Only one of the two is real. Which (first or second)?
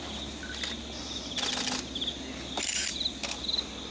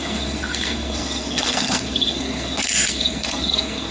first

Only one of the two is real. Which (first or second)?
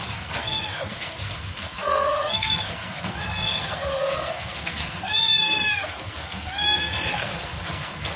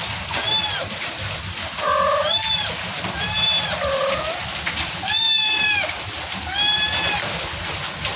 second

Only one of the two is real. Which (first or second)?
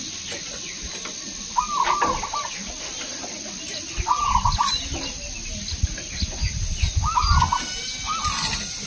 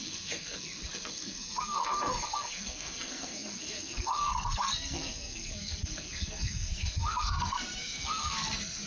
first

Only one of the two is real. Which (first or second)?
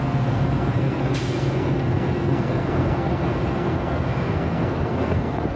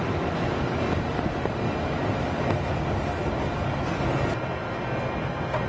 second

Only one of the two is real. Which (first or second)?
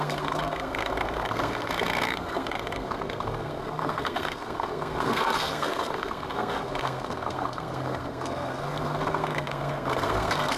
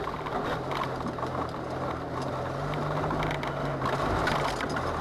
second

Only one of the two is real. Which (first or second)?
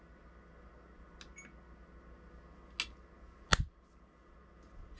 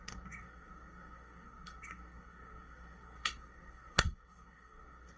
first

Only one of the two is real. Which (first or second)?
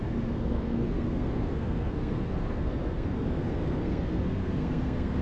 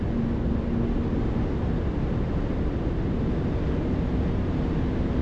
second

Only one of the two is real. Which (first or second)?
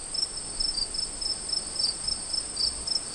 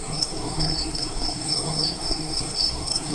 first